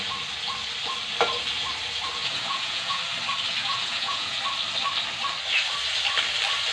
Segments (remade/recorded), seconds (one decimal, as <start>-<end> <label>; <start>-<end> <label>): 0.0-2.2 recorded; 2.2-3.0 remade; 3.0-3.6 recorded; 3.6-4.4 remade; 4.4-6.7 recorded